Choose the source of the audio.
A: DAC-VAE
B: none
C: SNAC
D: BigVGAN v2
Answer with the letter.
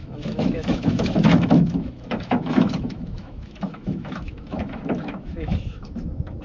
A